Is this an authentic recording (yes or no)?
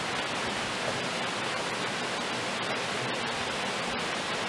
yes